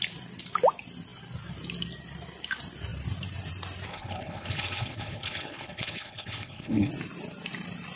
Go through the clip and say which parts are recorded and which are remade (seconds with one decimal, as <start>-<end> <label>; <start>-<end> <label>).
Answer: 0.0-3.9 recorded; 3.9-6.9 remade; 6.9-8.0 recorded